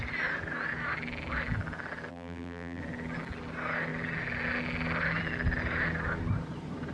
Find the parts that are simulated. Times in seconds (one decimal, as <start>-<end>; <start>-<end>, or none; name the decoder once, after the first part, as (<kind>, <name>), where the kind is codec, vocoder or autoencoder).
2.1-2.8 (vocoder, BigVGAN v2)